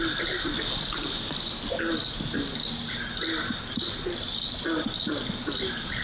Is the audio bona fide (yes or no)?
yes